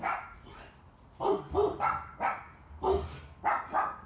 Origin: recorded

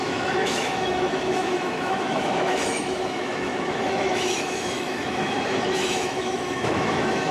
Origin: remade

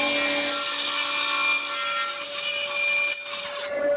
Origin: recorded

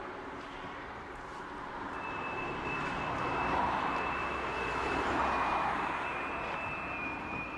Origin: remade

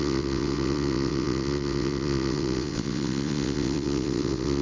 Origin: remade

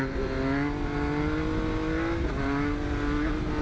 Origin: recorded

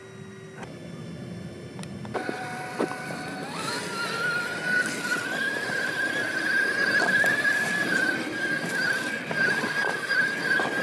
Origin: recorded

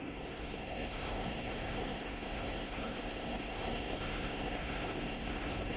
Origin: remade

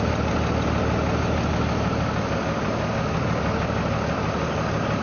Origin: recorded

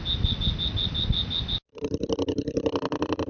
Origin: recorded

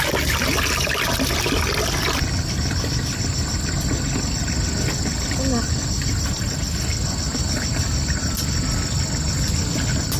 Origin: recorded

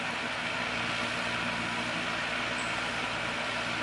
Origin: recorded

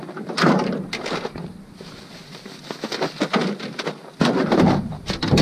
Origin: remade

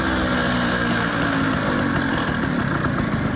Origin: recorded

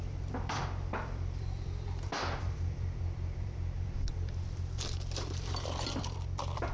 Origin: remade